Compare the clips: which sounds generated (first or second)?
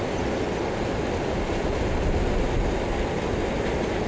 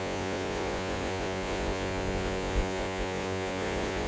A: second